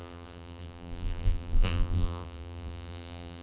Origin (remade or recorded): remade